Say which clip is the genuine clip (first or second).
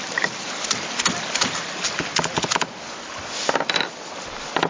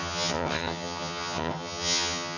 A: first